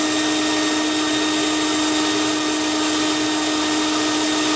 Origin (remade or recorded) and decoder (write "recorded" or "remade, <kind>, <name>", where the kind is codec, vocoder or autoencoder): recorded